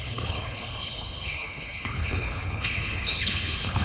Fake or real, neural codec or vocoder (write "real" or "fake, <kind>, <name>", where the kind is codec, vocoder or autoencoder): fake, codec, HILCodec